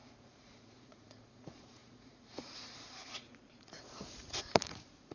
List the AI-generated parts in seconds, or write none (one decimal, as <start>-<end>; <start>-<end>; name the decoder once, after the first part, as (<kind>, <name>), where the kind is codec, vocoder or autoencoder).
0.0-5.1 (vocoder, Vocos)